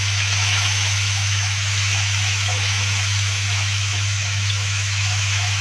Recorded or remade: remade